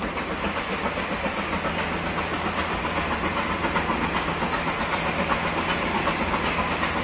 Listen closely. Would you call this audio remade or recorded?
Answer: recorded